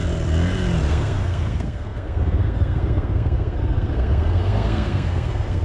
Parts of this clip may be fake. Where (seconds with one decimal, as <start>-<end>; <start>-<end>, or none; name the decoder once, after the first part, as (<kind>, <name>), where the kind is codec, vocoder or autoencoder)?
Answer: 0.9-5.6 (codec, SNAC)